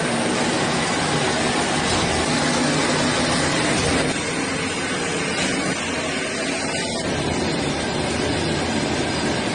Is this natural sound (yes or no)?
yes